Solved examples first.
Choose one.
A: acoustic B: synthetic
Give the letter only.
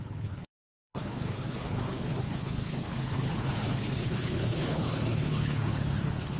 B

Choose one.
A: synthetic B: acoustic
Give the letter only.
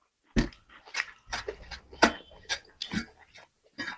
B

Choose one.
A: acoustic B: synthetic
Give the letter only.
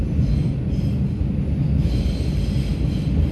A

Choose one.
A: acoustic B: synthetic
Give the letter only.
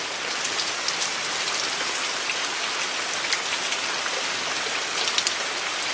A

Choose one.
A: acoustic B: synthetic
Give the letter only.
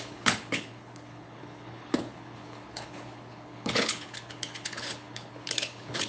B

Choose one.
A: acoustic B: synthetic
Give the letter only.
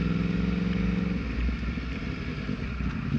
A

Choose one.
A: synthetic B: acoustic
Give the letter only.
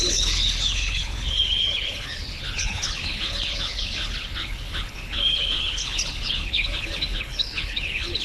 A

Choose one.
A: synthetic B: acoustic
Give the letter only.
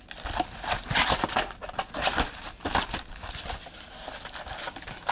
B